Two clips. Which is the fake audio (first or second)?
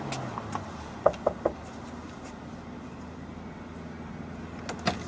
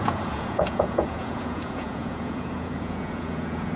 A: second